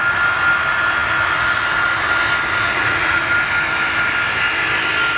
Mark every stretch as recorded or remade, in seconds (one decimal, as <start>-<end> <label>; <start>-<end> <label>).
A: 0.0-2.6 recorded; 2.6-3.2 remade; 3.2-5.2 recorded